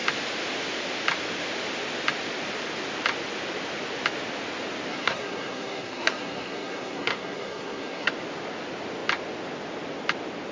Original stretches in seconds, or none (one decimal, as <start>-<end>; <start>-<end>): 0.0-4.9; 8.1-10.5